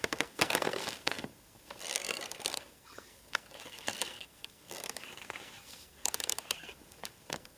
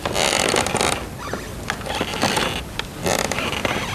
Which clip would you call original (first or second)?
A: second